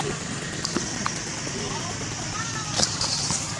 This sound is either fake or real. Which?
fake